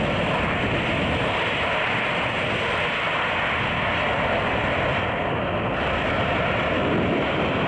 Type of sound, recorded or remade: recorded